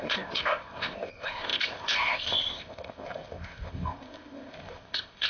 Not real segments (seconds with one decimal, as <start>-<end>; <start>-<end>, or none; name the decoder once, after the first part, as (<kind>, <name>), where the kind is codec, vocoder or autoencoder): 0.0-5.3 (codec, ZipCodec)